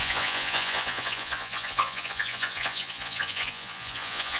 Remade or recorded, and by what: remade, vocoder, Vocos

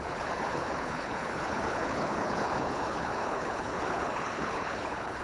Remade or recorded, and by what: remade, codec, HILCodec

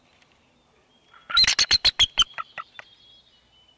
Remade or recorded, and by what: recorded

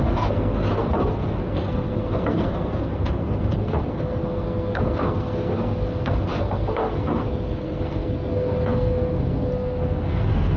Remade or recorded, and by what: remade, codec, SNAC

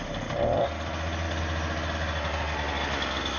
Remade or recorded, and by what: recorded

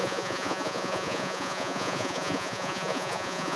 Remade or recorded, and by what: remade, vocoder, Vocos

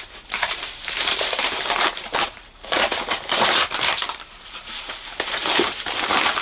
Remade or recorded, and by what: remade, vocoder, BigVGAN v2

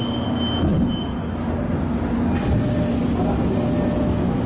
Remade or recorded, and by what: recorded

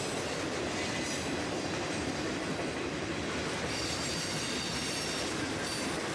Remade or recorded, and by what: recorded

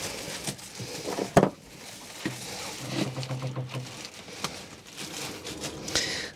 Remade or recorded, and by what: recorded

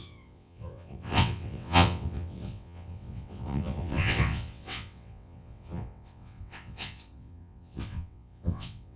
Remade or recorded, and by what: remade, vocoder, WaveNeXt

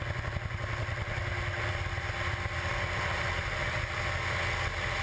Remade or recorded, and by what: recorded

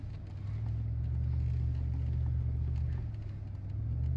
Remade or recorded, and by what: recorded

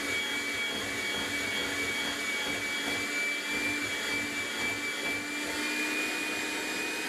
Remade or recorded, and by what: recorded